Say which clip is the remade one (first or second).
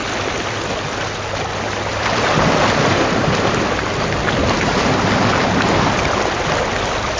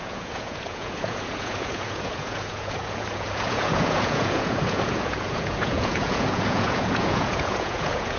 second